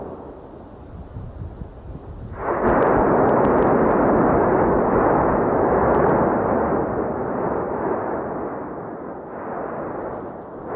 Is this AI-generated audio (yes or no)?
no